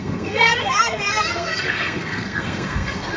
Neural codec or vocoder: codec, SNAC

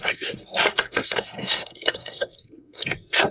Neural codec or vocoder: codec, SNAC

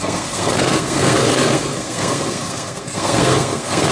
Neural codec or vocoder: codec, SNAC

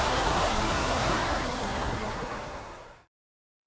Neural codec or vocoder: codec, SNAC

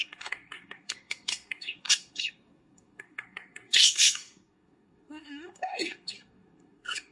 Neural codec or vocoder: codec, SNAC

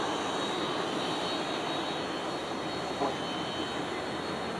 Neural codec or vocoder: none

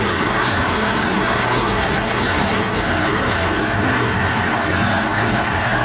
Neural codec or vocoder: codec, SNAC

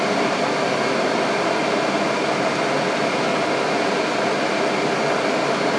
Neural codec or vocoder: none